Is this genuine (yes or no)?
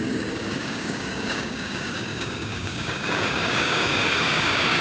no